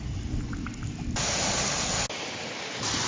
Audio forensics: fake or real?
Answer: real